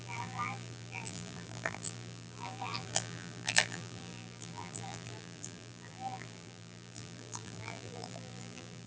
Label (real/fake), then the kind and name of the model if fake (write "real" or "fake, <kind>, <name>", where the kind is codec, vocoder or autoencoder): fake, vocoder, BigVGAN v2